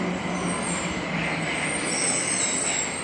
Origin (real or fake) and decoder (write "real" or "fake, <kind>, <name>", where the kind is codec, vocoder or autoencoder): real